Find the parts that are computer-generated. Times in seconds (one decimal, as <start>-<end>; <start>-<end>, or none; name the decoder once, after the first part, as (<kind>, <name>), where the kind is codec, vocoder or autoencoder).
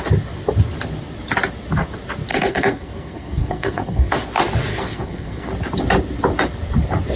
2.3-4.1 (codec, SNAC); 4.7-5.5